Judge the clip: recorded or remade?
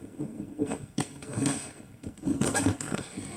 remade